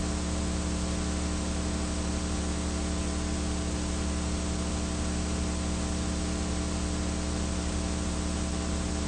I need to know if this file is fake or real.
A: real